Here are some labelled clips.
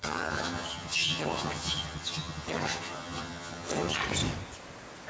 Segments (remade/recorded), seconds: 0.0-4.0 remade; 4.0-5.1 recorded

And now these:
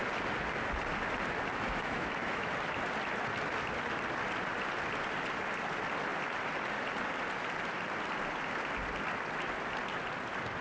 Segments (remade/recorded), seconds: 0.0-1.5 recorded; 1.5-2.5 remade; 2.5-10.6 recorded

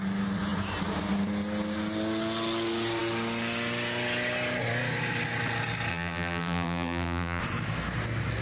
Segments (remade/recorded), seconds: 0.0-5.9 recorded; 5.9-7.4 remade; 7.4-8.4 recorded

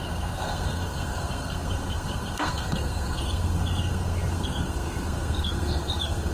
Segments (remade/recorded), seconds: 0.0-6.3 remade

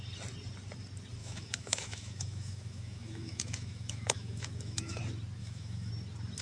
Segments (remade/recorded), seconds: 0.0-1.2 recorded; 1.2-5.0 remade; 5.0-5.4 recorded; 5.4-5.9 remade; 5.9-6.4 recorded

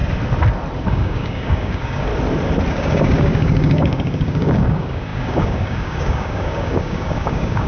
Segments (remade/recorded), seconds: 0.0-0.9 recorded; 0.9-2.1 remade; 2.1-2.7 recorded; 2.7-7.7 remade

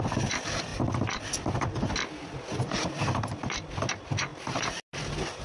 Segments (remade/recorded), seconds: 0.0-5.4 recorded

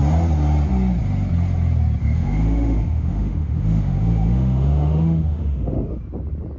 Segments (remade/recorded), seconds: 0.0-2.0 recorded; 2.0-6.0 remade; 6.0-6.6 recorded